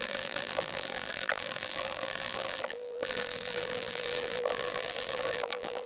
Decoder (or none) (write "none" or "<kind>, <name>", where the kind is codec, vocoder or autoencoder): vocoder, BigVGAN v2